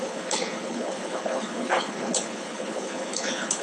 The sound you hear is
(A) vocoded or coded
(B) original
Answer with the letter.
A